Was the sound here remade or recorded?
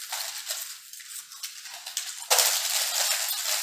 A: recorded